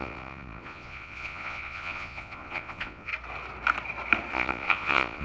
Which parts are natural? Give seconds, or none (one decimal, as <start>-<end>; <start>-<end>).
3.1-4.3